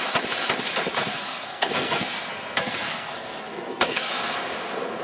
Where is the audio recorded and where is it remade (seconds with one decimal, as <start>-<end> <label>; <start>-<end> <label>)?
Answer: 0.0-1.1 recorded; 1.1-4.1 remade; 4.1-5.0 recorded